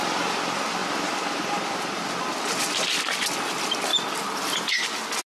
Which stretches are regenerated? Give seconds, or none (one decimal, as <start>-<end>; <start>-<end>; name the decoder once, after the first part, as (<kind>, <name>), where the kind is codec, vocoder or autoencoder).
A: none